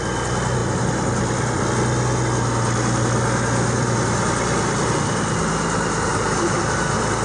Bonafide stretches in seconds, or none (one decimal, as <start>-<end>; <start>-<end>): 0.0-6.1; 6.6-7.2